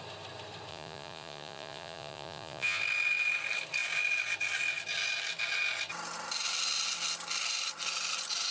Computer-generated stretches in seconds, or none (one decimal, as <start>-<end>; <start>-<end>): 0.7-2.8